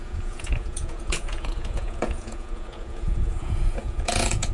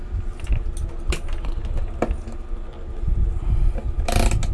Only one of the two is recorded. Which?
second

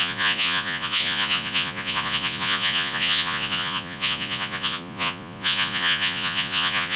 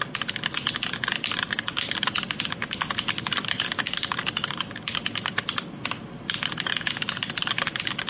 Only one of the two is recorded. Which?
second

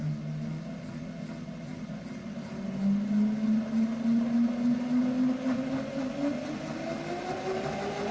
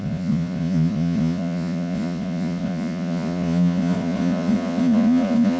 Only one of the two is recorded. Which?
first